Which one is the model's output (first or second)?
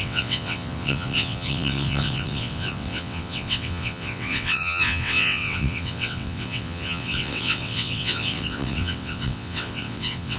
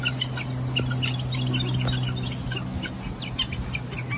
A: first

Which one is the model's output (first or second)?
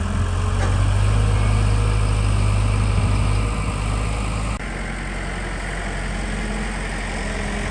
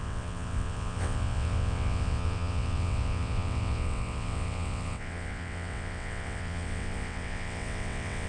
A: second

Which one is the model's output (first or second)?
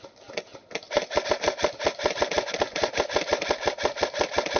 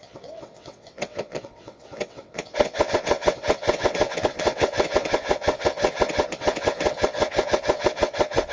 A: second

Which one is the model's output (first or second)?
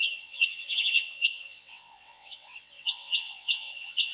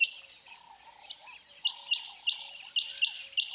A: first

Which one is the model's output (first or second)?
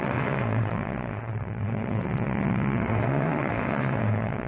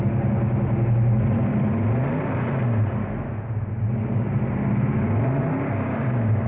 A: first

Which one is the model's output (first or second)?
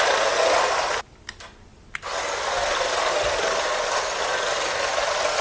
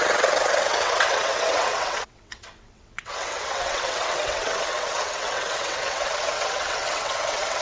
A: second